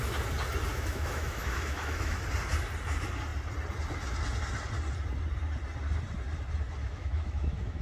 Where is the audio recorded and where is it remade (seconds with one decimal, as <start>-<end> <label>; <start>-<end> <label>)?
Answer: 0.0-0.7 recorded; 0.7-2.2 remade; 2.2-6.8 recorded; 6.8-7.8 remade